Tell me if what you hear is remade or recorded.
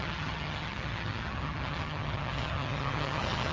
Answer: remade